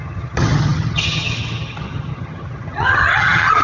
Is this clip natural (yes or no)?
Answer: no